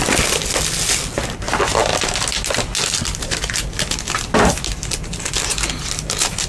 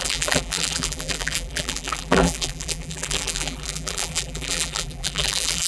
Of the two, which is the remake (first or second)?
second